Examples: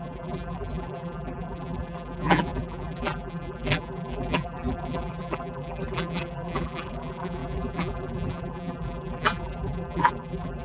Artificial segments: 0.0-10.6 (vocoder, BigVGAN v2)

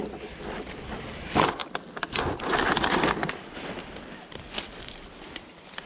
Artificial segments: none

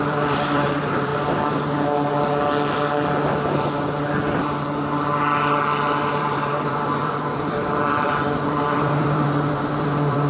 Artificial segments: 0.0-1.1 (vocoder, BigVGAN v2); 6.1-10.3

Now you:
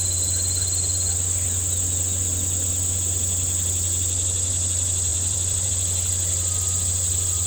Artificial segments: 5.1-5.7 (vocoder, BigVGAN v2)